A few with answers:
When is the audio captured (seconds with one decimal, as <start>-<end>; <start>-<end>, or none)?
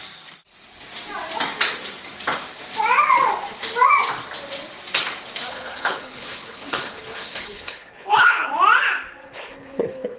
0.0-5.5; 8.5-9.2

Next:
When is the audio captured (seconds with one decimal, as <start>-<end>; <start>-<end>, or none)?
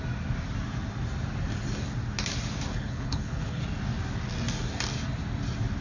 0.0-2.7; 3.6-5.8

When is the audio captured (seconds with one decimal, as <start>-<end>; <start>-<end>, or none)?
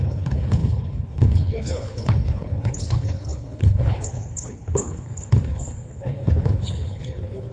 none